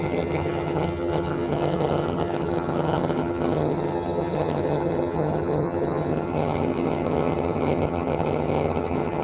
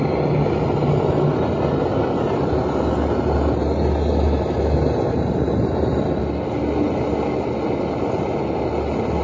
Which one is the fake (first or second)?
first